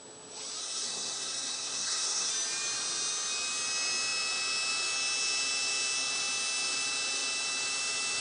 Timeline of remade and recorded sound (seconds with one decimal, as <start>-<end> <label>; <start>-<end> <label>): 0.0-0.6 recorded; 0.6-2.3 remade; 2.3-8.2 recorded